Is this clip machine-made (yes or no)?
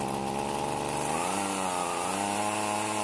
no